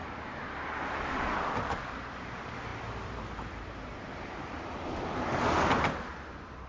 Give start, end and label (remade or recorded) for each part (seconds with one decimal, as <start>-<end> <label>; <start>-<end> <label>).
0.0-6.7 recorded